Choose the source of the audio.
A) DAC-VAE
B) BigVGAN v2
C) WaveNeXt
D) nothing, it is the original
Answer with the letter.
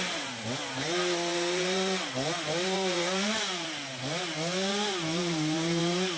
B